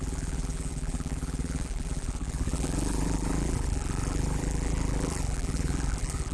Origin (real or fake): fake